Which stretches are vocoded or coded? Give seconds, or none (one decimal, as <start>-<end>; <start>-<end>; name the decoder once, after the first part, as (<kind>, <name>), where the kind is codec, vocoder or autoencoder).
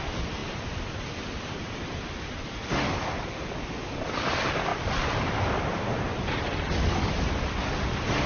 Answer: none